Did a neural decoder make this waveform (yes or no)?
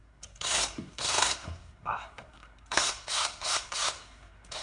yes